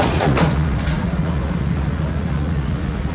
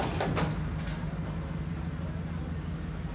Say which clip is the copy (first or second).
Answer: first